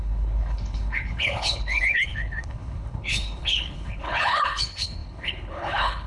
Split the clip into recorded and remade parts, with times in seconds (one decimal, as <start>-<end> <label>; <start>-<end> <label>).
0.0-6.1 remade